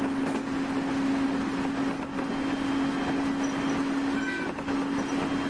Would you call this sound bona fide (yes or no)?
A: yes